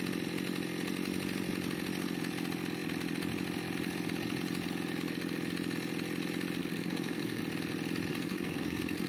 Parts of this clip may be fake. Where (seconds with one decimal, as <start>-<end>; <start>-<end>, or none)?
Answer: 6.6-7.4; 8.1-9.1